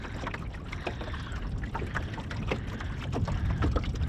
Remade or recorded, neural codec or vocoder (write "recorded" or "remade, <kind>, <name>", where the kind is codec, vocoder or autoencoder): recorded